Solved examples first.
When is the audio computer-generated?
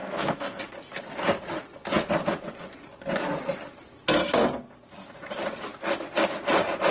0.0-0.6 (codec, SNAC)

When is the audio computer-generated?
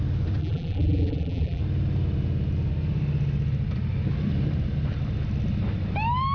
0.4-1.6 (vocoder, BigVGAN v2)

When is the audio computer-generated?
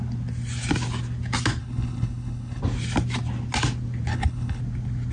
1.6-2.6 (codec, HILCodec); 4.1-4.6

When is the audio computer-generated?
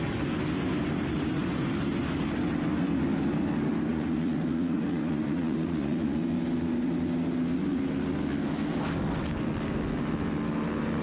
3.9-6.2 (vocoder, Vocos)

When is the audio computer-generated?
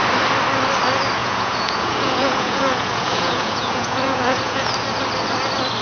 1.2-4.7 (vocoder, Vocos)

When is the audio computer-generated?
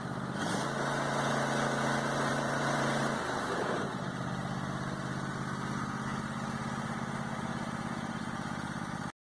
2.3-3.0 (vocoder, BigVGAN v2)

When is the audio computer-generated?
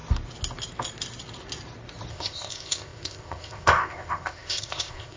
2.1-5.2 (codec, ZipCodec)